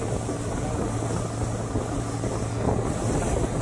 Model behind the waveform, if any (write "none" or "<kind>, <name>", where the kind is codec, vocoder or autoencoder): none